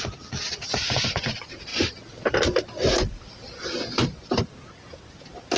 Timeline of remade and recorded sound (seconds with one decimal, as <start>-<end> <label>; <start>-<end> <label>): 0.0-5.6 recorded